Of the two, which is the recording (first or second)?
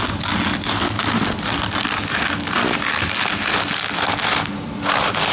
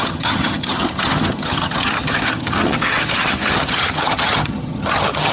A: first